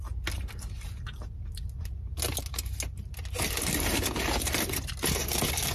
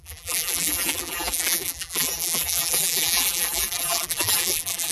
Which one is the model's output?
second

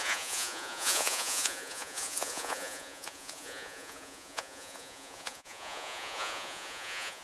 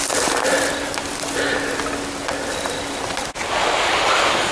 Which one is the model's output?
first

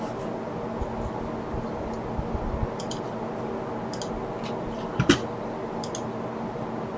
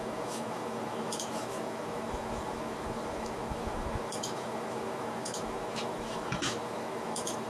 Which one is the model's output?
second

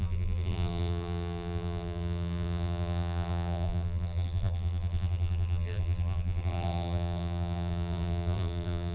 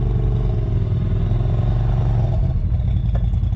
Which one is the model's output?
first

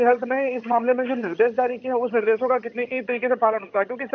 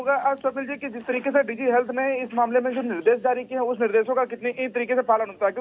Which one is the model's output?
first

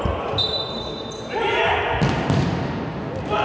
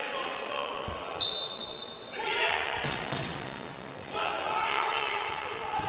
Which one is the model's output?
second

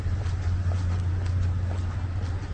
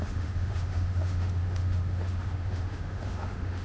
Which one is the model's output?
second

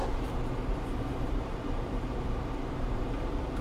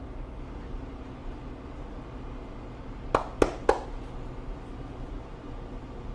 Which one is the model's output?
first